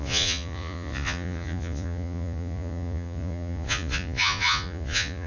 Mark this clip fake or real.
fake